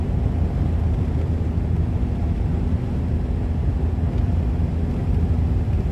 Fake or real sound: real